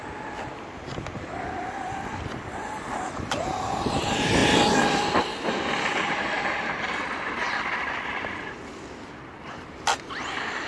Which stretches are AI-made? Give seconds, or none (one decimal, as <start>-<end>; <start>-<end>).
0.0-2.9